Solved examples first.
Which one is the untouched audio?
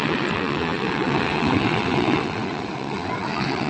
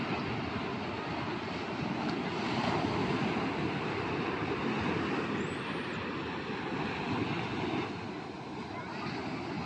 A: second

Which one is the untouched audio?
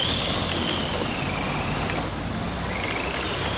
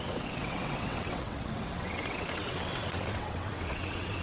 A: first